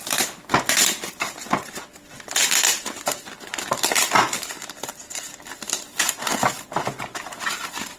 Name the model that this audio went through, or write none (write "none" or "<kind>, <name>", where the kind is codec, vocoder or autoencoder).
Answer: none